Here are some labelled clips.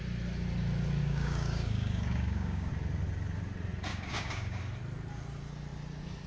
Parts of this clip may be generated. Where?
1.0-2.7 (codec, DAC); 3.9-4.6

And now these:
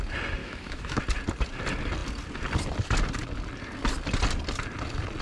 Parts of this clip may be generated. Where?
0.4-1.0 (autoencoder, DAC-VAE)

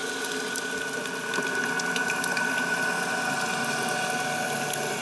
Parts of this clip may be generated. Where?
none

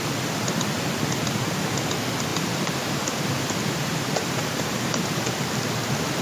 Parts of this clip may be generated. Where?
2.3-5.3 (vocoder, BigVGAN v2)

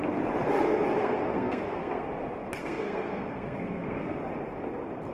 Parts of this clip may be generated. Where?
1.0-2.1 (codec, SNAC); 2.6-4.2

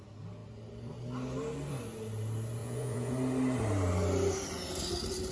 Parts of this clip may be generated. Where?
2.6-3.1 (vocoder, Vocos)